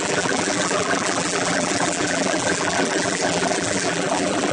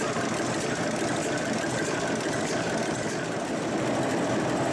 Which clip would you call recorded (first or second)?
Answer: second